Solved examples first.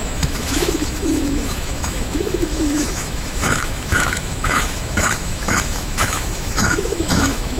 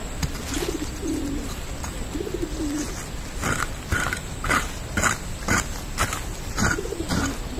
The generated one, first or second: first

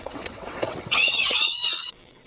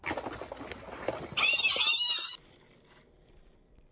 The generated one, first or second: first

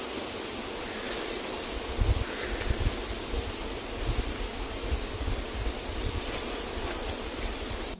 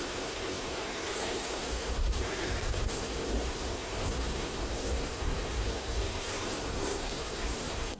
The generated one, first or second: second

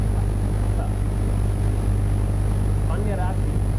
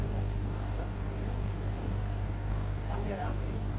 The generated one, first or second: second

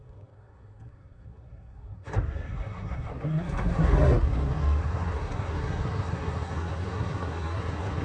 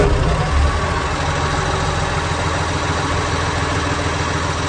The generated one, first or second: first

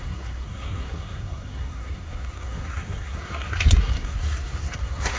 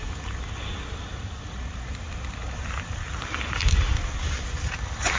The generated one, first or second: first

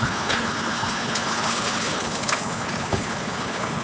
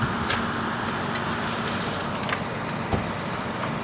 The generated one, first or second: first